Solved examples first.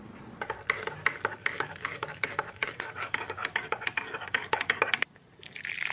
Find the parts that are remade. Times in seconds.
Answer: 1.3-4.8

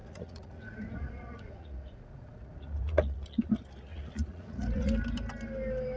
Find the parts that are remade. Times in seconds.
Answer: 0.0-3.5; 3.9-4.9

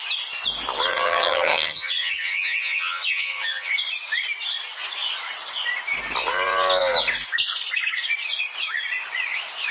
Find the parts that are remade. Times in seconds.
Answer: 0.9-3.7

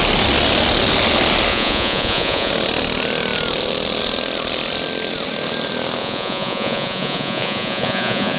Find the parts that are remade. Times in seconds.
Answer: 1.5-2.5; 6.0-8.4

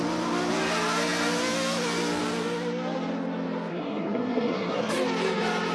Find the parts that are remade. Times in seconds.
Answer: 3.7-4.9

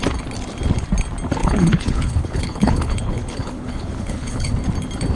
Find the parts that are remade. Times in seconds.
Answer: 1.4-4.5

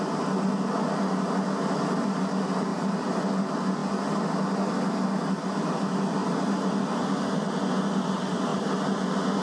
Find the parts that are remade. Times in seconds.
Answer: 2.7-3.2; 6.2-6.7

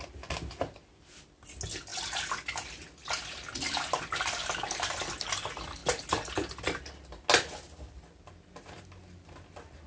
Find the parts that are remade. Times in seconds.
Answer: none